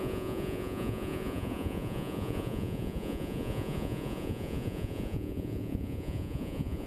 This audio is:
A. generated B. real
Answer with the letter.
A